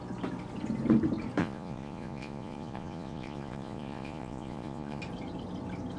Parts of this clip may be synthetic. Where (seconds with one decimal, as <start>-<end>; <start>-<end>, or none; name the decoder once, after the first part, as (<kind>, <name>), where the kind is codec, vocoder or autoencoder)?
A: 1.4-5.0 (vocoder, Vocos)